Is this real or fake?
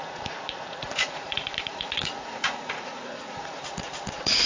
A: fake